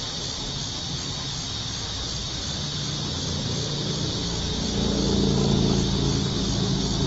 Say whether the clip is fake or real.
real